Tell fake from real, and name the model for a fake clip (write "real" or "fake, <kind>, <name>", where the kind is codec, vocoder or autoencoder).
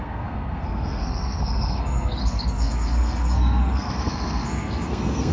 fake, codec, SNAC